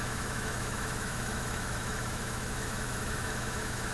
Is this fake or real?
fake